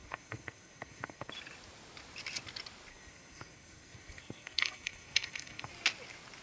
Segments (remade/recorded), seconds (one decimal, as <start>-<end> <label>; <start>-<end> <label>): 0.0-1.3 remade; 1.3-2.9 recorded; 2.9-5.7 remade; 5.7-6.4 recorded